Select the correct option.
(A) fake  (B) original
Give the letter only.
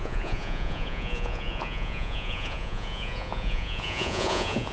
A